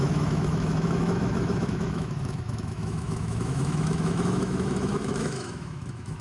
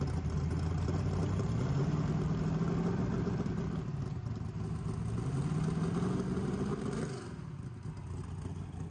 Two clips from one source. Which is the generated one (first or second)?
first